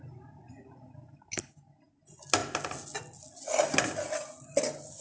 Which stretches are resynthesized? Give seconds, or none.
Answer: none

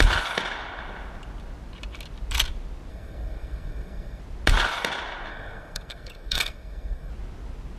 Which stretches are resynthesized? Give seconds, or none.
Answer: 2.9-4.2 (codec, SNAC); 5.3-7.1

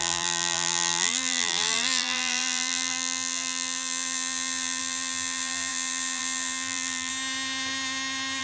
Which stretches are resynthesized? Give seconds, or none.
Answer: 0.0-7.1 (vocoder, BigVGAN v2)

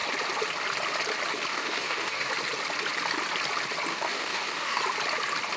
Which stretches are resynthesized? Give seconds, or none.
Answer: 1.5-2.3 (codec, DAC); 3.9-4.8